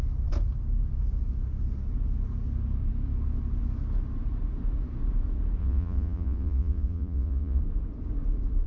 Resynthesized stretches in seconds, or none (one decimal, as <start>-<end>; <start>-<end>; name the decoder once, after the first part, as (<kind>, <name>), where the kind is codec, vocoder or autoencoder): 5.6-7.6 (vocoder, Vocos)